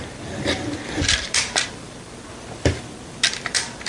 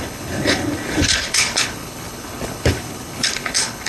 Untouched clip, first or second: first